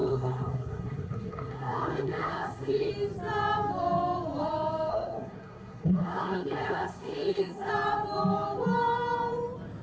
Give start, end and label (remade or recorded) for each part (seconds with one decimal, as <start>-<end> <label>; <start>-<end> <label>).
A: 0.0-2.9 remade; 2.9-4.9 recorded; 4.9-7.7 remade; 7.7-9.8 recorded